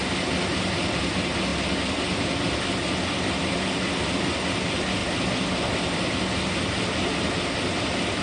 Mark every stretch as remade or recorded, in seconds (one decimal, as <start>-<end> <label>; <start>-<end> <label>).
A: 0.0-8.2 recorded